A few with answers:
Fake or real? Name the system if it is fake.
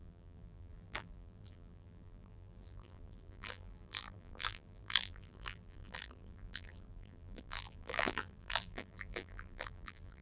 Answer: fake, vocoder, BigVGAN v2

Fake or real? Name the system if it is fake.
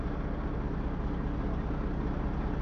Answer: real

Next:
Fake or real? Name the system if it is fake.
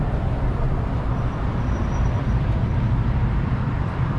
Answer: fake, vocoder, BigVGAN v2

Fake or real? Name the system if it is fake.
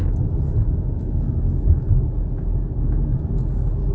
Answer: real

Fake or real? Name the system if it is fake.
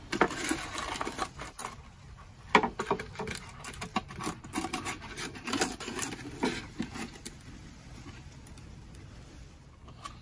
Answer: real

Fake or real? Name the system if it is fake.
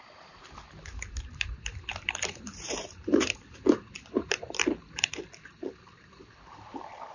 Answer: fake, vocoder, BigVGAN v2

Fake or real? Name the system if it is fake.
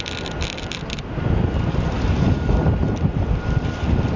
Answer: fake, vocoder, BigVGAN v2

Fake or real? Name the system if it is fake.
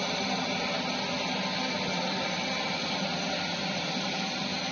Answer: real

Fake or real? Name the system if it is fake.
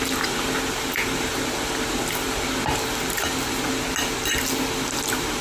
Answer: real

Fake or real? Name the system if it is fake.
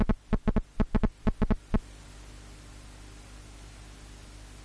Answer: real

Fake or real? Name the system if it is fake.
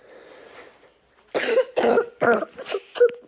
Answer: fake, vocoder, BigVGAN v2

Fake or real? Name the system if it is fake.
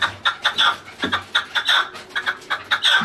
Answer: real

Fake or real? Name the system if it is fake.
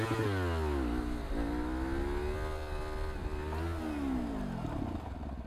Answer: real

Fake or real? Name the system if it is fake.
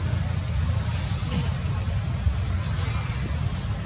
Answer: real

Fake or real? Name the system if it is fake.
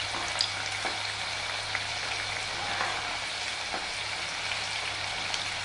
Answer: real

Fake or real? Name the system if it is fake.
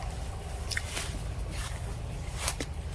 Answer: real